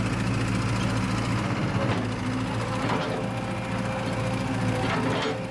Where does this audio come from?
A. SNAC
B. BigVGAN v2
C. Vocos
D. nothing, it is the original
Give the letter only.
D